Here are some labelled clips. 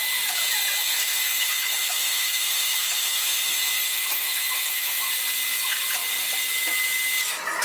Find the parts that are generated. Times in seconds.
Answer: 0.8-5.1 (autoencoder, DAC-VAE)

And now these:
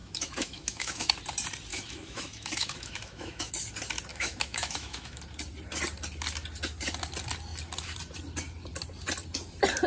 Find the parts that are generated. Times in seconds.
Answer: 0.0-1.1 (autoencoder, DAC-VAE); 1.7-3.5; 4.1-5.2

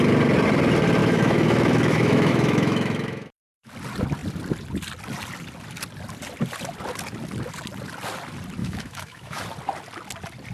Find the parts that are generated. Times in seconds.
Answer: 1.0-3.7 (autoencoder, DAC-VAE); 8.6-9.4

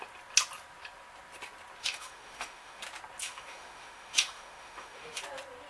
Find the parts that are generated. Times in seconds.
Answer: 1.8-2.8 (autoencoder, DAC-VAE); 3.2-5.2